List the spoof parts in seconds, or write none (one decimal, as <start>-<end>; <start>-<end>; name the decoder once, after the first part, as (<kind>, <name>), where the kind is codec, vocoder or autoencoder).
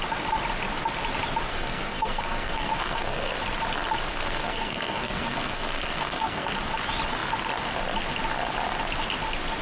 1.5-3.3 (codec, SNAC); 4.1-6.5